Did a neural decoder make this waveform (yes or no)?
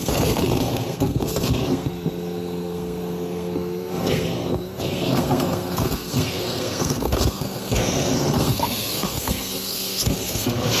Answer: yes